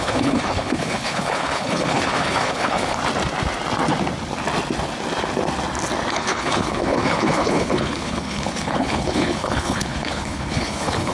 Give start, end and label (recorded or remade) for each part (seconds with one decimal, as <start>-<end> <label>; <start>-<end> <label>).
0.0-3.0 remade; 3.0-6.1 recorded; 6.1-11.1 remade